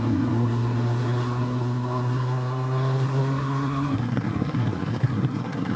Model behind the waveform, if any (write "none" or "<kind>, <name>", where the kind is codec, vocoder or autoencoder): codec, SNAC